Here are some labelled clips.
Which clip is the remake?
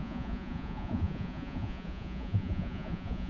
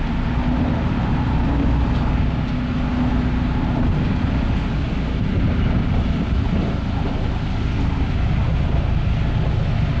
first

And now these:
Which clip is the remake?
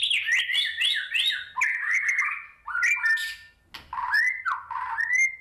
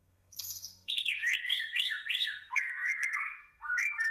second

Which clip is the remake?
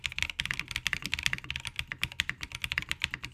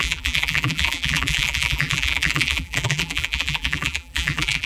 second